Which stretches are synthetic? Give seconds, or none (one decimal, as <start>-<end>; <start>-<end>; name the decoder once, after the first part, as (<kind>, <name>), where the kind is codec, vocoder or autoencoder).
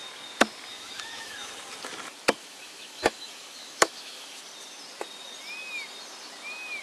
0.7-1.5 (autoencoder, DAC-VAE); 2.4-4.4